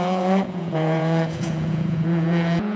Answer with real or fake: fake